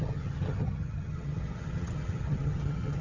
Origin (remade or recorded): remade